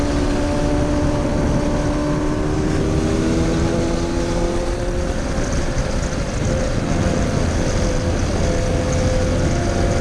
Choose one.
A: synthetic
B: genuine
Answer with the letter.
B